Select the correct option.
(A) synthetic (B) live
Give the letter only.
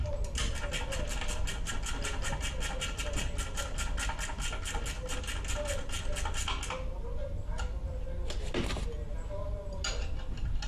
B